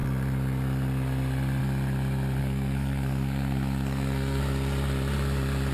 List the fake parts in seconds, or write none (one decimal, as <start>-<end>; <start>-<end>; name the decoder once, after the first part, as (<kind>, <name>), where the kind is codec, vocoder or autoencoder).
2.4-4.4 (codec, SNAC)